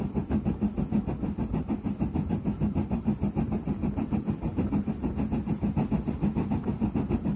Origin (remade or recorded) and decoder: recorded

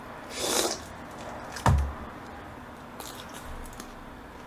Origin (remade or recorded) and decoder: recorded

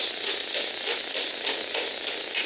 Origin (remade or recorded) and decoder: recorded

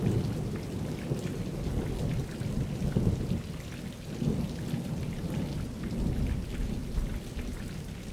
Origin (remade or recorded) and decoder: recorded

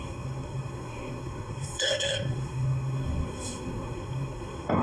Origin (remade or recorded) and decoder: remade, codec, SNAC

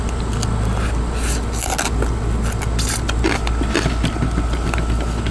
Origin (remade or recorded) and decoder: recorded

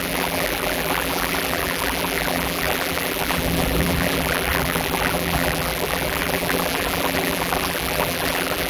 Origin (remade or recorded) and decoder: remade, vocoder, BigVGAN v2